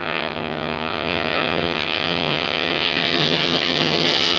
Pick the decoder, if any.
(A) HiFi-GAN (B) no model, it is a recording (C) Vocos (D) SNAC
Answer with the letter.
A